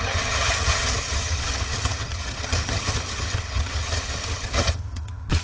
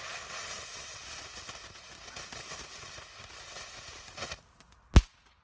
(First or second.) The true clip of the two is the second